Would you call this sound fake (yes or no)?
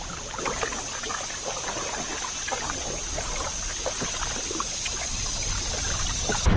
no